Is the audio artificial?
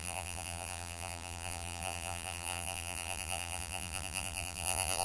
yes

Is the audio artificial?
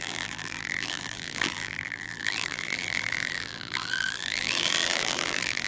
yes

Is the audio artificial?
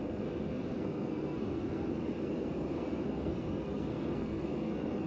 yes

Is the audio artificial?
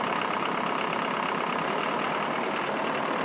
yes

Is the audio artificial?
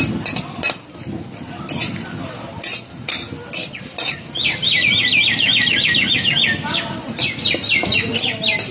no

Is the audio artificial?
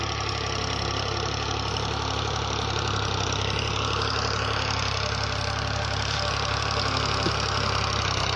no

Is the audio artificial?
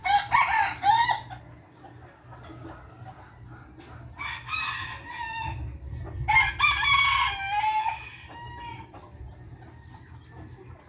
no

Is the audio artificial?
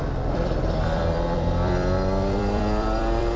yes